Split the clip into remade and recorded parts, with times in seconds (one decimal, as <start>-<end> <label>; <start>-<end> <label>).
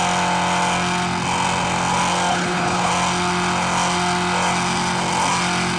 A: 0.0-2.3 recorded; 2.3-2.9 remade; 2.9-5.8 recorded